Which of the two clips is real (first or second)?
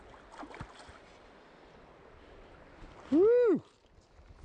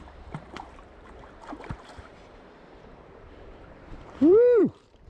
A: first